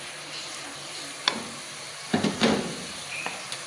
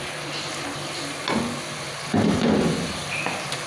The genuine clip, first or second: second